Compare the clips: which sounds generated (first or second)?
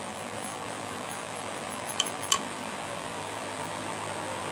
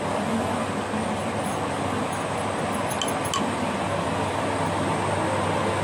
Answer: first